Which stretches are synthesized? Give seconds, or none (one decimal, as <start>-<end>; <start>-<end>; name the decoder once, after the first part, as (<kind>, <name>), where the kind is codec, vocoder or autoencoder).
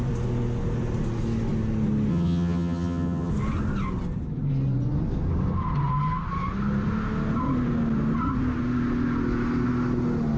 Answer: 2.1-3.3 (vocoder, HiFi-GAN)